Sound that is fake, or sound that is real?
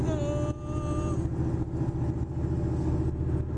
real